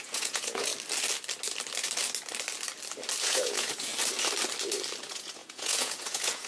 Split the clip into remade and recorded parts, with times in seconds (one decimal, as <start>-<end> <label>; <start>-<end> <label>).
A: 0.0-0.7 remade; 0.7-3.2 recorded; 3.2-3.9 remade; 3.9-5.0 recorded; 5.0-6.5 remade